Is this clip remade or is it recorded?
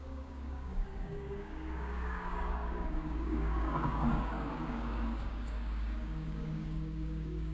remade